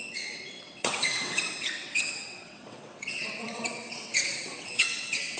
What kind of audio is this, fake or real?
fake